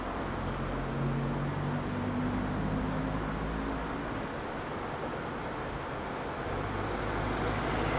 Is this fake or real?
real